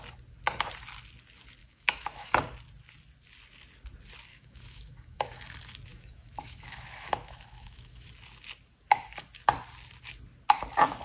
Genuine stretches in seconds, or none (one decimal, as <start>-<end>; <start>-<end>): 0.0-1.6; 2.3-4.3; 5.5-5.9; 8.1-11.0